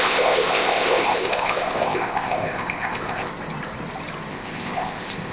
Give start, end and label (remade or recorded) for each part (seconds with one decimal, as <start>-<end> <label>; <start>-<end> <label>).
0.0-3.3 remade; 3.3-4.3 recorded; 4.3-5.3 remade